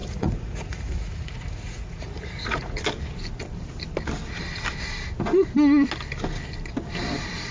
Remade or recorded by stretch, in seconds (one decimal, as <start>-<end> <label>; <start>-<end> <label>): 0.0-2.8 remade; 2.8-7.5 recorded